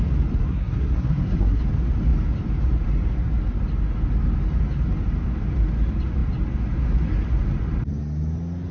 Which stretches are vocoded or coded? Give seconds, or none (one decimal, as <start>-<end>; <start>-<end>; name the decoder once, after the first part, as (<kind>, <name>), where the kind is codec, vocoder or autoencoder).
0.4-1.6 (codec, SNAC)